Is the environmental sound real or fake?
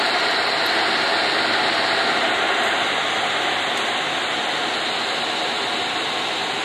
real